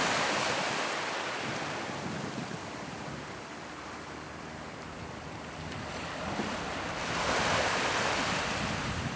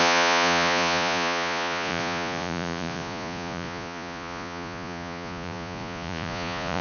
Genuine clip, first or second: first